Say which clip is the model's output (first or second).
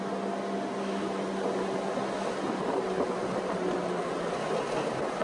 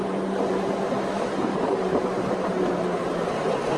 second